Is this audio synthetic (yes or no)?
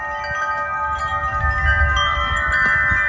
no